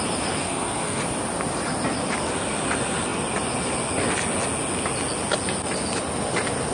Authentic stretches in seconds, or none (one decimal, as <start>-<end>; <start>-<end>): 0.0-0.4; 1.0-6.7